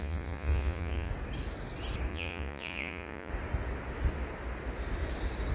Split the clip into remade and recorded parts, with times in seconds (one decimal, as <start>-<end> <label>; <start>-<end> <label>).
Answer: 0.0-1.1 remade; 1.1-2.1 recorded; 2.1-3.3 remade; 3.3-5.5 recorded